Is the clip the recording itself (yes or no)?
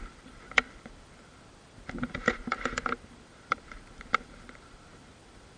no